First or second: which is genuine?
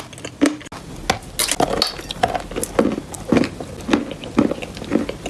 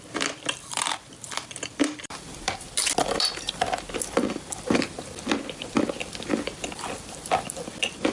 first